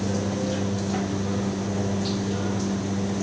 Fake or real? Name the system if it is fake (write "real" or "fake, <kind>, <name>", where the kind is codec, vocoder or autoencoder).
real